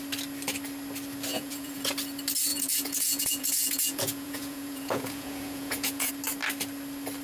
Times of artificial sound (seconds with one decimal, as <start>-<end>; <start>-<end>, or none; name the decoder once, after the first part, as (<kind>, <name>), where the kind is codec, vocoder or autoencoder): 1.3-1.9 (vocoder, Vocos); 2.5-6.1